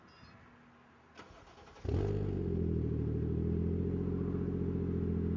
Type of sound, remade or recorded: recorded